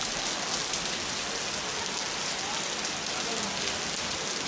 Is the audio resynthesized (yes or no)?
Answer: no